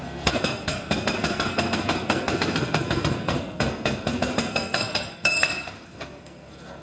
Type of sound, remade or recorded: remade